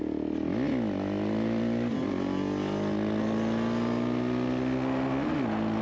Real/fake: real